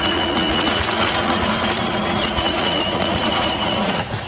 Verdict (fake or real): fake